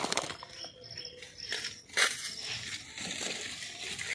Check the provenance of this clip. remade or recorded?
recorded